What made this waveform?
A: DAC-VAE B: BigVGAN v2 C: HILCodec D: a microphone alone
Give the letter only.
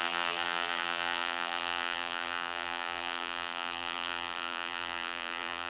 B